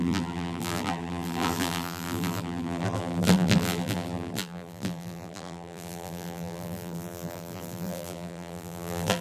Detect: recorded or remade remade